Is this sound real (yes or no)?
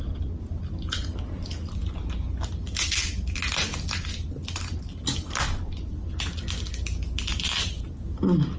yes